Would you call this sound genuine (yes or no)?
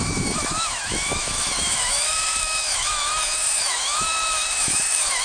no